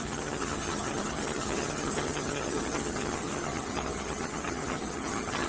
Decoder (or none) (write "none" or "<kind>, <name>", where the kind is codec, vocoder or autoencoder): vocoder, HiFi-GAN